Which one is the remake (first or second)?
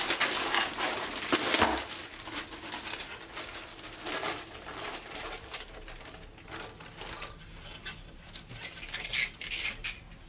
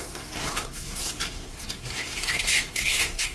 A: second